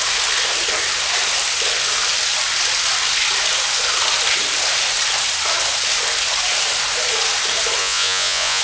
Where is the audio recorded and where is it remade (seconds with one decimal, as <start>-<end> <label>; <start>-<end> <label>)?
0.0-7.8 recorded; 7.8-8.6 remade